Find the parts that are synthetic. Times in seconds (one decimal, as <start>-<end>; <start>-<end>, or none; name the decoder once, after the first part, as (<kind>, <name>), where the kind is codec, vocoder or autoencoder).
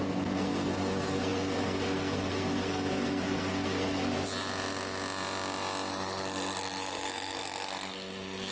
0.0-4.1 (codec, SNAC); 5.9-8.5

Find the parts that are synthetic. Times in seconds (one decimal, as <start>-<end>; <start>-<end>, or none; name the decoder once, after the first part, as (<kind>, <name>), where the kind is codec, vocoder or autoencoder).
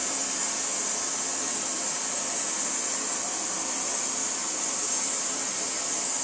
4.4-5.7 (vocoder, BigVGAN v2)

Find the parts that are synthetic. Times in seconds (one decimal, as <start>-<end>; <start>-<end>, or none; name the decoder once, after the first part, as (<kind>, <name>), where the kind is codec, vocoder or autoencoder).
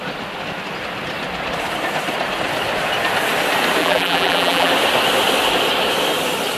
3.8-4.7 (vocoder, BigVGAN v2)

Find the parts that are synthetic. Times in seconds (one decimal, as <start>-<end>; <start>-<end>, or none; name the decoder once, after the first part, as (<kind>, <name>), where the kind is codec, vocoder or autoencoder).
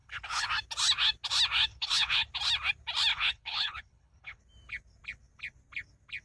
0.0-0.5 (codec, HILCodec); 1.7-2.3; 3.1-4.4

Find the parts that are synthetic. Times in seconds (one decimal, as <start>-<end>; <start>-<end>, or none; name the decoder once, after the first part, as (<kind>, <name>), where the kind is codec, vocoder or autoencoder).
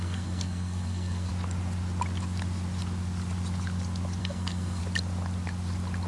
0.0-1.3 (codec, SNAC); 4.2-4.8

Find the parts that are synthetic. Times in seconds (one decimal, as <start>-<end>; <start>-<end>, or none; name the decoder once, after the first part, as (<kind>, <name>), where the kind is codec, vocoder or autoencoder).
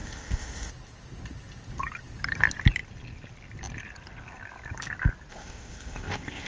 0.0-0.7 (codec, ZipCodec); 5.3-6.5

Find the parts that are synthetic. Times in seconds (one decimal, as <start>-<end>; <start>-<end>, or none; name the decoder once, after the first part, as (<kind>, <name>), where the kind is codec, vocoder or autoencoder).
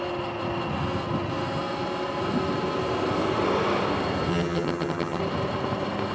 4.3-5.2 (vocoder, HiFi-GAN)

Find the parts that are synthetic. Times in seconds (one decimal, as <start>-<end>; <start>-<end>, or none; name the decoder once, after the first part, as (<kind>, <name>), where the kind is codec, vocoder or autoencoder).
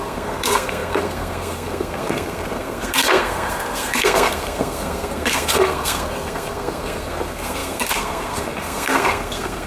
0.0-9.7 (codec, SNAC)